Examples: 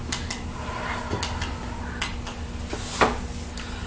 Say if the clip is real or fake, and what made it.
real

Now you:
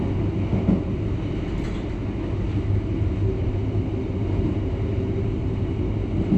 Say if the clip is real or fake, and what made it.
real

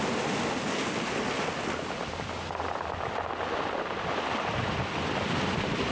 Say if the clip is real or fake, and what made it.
real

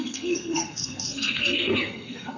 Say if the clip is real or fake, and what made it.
fake, codec, SNAC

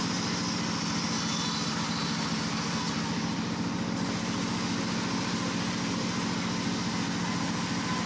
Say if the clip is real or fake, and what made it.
real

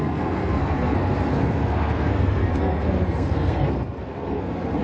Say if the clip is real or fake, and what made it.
fake, codec, SNAC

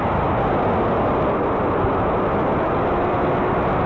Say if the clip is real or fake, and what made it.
real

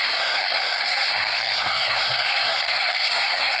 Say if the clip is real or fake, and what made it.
fake, codec, SNAC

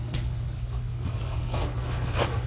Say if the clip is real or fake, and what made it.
fake, codec, SNAC